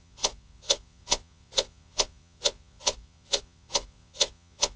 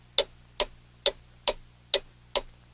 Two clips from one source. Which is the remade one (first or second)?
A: first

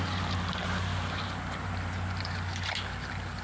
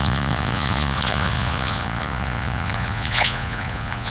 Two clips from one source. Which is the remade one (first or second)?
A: second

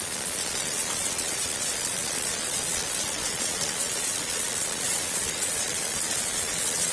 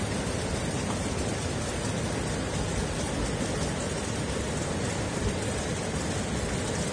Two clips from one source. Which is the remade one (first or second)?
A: first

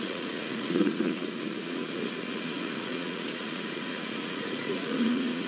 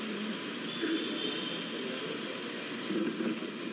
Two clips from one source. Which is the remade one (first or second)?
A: first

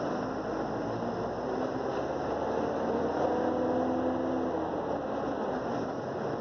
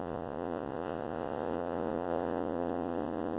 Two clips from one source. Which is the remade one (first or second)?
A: second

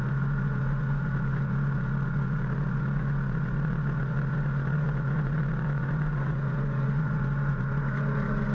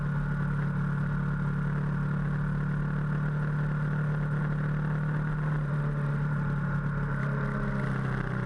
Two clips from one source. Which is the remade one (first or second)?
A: first